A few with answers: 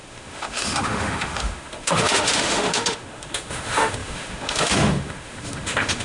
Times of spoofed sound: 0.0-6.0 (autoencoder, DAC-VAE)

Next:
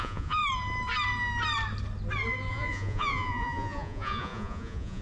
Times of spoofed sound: 0.0-0.4 (vocoder, Vocos); 2.5-5.0